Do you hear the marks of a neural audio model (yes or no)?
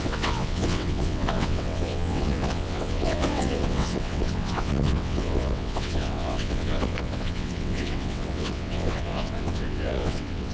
yes